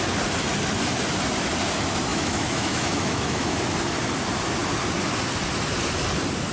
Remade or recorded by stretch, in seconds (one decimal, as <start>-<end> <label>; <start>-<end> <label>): 0.0-2.1 recorded; 2.1-3.6 remade; 3.6-6.5 recorded

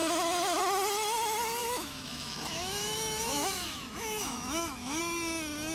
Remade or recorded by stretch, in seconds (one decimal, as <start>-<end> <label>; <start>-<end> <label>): 0.0-1.6 recorded; 1.6-5.0 remade; 5.0-5.7 recorded

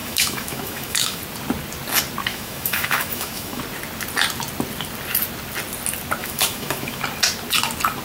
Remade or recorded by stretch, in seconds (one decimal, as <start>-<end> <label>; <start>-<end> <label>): 0.0-1.2 remade; 1.2-2.3 recorded; 2.3-3.6 remade; 3.6-6.2 recorded; 6.2-7.0 remade; 7.0-8.0 recorded

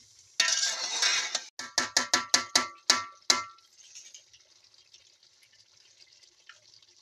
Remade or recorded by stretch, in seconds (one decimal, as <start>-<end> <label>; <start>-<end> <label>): 0.0-7.0 recorded

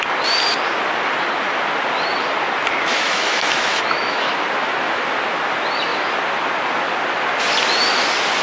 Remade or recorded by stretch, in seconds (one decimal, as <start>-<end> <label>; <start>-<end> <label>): 0.0-2.9 recorded; 2.9-4.3 remade; 4.3-8.4 recorded

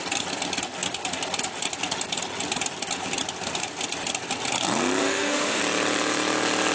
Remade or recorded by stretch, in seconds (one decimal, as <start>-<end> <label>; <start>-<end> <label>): 0.0-5.0 recorded; 5.0-5.6 remade; 5.6-6.7 recorded

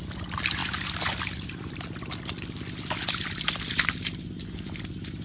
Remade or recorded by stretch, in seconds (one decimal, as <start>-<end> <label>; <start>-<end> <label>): 0.0-5.2 recorded